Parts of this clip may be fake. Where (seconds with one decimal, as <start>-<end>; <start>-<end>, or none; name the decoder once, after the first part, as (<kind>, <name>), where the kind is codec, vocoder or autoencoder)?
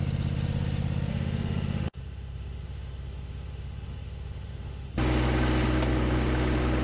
1.1-4.9 (autoencoder, DAC-VAE)